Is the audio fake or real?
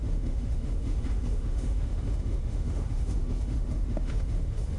fake